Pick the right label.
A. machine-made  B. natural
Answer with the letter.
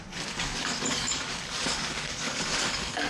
A